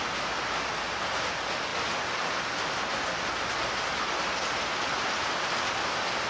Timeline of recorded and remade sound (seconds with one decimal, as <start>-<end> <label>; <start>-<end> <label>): 0.0-6.3 recorded